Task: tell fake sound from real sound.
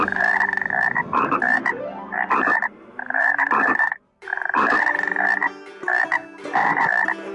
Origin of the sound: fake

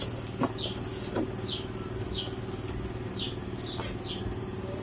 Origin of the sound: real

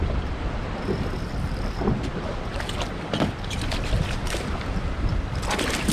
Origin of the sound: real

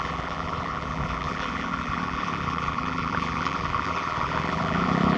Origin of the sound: fake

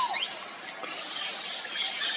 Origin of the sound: real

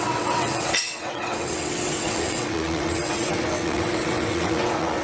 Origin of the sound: fake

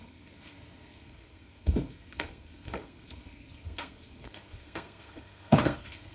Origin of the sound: fake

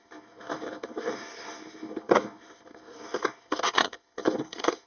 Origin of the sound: fake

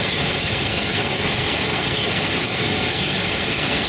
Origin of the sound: fake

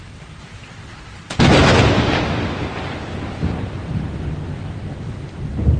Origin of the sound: real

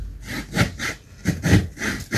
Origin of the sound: real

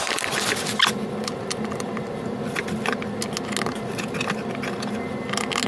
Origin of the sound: real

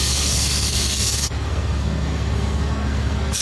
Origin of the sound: fake